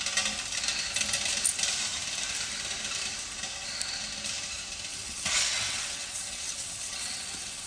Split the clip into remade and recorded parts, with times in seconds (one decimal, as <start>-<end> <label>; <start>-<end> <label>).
0.0-4.9 recorded; 4.9-7.7 remade